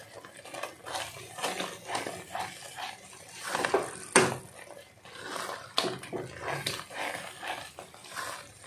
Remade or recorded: recorded